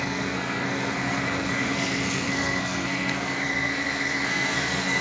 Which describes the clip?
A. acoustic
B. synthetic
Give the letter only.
B